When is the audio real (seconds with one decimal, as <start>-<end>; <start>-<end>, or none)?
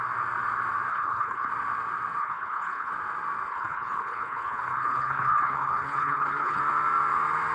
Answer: 0.0-0.9; 1.5-2.2; 2.9-3.5; 6.6-7.5